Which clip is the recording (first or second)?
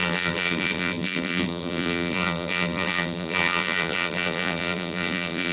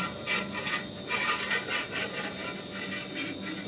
second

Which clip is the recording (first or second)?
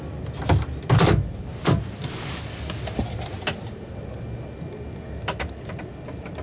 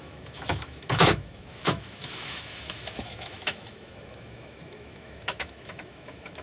first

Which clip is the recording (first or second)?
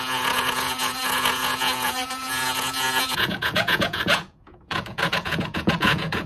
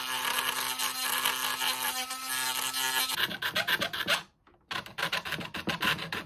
second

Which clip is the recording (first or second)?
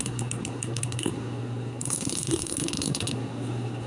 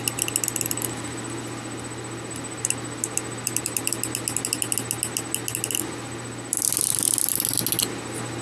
second